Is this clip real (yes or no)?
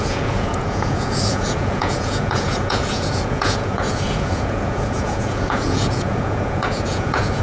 no